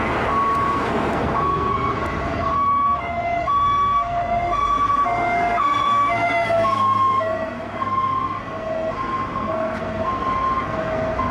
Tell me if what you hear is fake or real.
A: fake